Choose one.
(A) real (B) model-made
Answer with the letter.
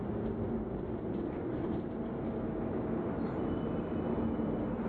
A